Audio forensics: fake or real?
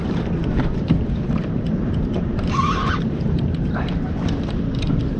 fake